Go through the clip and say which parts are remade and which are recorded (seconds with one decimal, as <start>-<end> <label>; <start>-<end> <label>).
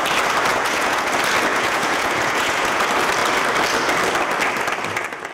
0.0-0.5 recorded; 0.5-1.1 remade; 1.1-1.5 recorded; 1.5-2.8 remade; 2.8-5.3 recorded